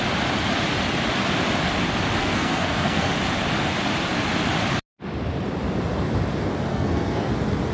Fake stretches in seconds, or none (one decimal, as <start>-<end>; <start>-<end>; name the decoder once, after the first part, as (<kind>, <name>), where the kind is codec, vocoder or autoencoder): 2.2-3.1 (codec, SNAC); 6.7-7.3